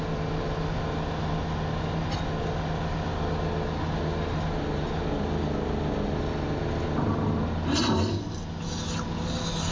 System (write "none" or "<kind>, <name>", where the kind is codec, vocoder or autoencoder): none